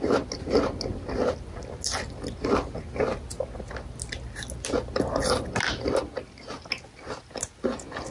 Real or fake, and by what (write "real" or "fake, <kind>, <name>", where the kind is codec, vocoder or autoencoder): real